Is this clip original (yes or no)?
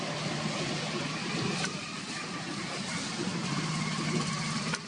no